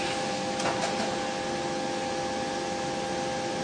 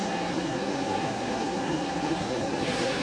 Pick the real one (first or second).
first